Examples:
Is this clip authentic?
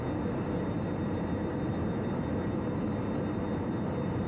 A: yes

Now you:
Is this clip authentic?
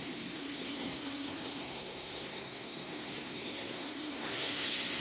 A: no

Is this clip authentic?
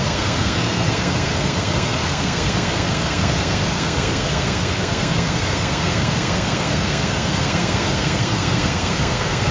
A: no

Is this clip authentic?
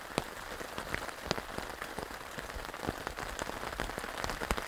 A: yes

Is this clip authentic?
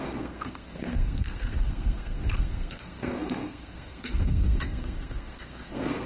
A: no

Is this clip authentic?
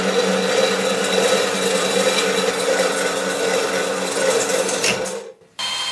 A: yes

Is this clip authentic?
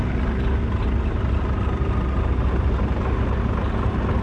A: yes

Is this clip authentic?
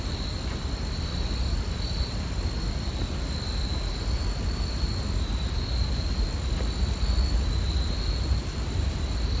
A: yes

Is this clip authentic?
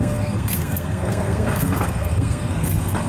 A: no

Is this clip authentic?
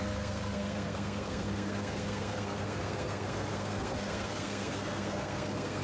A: no